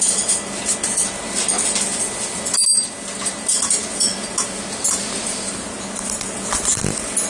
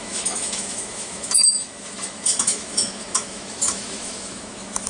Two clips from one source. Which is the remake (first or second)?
second